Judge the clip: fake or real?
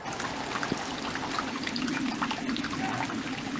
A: fake